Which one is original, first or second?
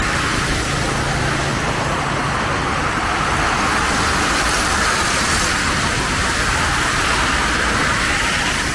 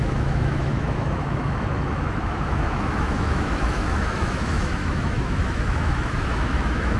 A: first